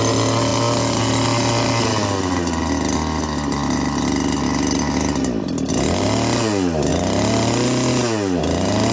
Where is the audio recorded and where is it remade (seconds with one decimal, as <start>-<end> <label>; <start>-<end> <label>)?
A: 0.0-8.9 recorded